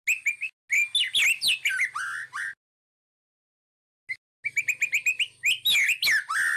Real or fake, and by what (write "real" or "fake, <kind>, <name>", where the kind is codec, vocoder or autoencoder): real